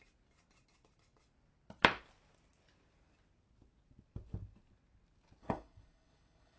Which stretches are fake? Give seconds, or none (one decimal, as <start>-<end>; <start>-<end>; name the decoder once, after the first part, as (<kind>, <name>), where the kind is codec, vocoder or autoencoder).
5.4-6.6 (codec, HILCodec)